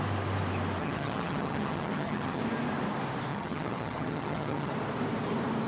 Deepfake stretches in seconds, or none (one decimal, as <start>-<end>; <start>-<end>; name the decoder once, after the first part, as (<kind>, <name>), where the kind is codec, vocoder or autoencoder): 0.8-2.4 (vocoder, HiFi-GAN); 3.3-4.7